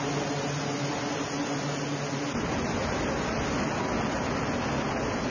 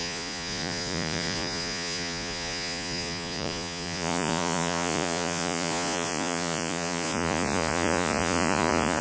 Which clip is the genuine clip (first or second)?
first